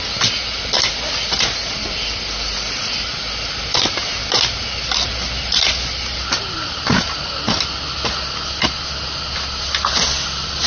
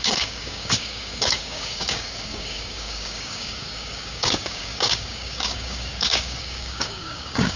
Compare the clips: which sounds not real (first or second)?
second